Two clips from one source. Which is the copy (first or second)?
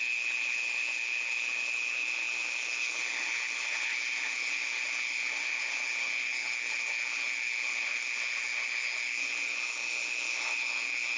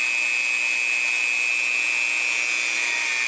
first